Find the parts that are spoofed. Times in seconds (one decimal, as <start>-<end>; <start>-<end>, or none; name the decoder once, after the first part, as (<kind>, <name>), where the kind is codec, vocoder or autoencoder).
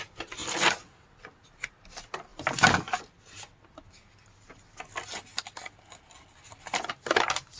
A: none